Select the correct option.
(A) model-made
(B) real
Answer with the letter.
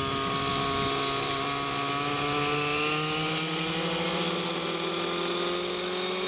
B